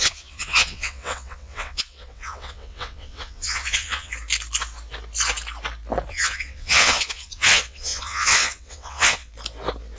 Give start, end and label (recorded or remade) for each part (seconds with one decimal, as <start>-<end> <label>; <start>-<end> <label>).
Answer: 0.0-4.1 remade; 4.1-6.1 recorded; 6.1-9.3 remade; 9.3-10.0 recorded